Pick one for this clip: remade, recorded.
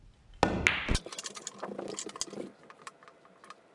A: recorded